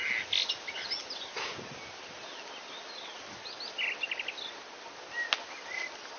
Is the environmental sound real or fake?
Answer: real